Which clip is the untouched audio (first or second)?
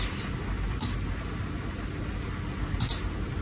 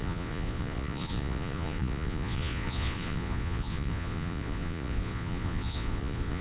first